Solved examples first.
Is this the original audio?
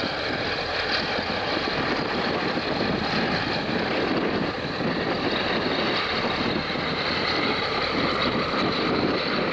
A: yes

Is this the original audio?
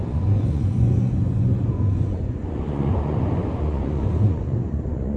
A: no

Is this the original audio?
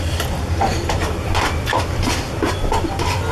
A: no